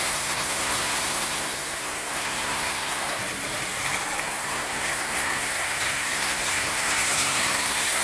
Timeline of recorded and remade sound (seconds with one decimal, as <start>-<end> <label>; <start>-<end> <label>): 0.0-3.2 remade; 3.2-4.2 recorded; 4.2-8.0 remade